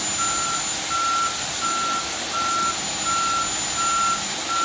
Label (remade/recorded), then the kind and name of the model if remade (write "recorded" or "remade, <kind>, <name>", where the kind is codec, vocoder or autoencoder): recorded